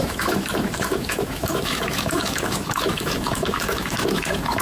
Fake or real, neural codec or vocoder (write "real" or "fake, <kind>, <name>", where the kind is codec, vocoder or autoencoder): fake, autoencoder, DAC-VAE